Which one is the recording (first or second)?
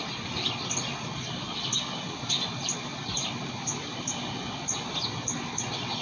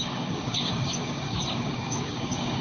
first